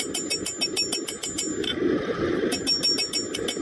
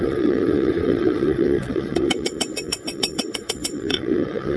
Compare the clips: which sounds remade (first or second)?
second